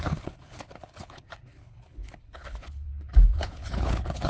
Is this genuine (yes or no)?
no